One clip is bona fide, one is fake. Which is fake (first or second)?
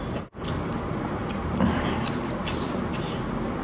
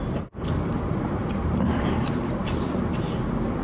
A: second